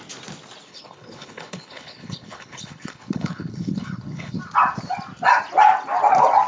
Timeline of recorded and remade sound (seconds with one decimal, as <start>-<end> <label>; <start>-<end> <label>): 0.0-0.7 recorded; 0.7-4.4 remade; 4.4-6.5 recorded